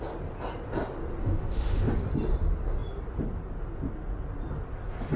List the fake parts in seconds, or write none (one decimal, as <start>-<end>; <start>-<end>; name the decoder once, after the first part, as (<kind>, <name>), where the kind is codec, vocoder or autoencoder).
1.2-1.9 (autoencoder, DAC-VAE)